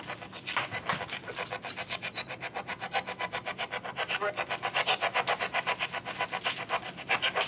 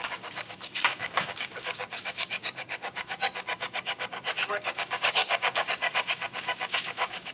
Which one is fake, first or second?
second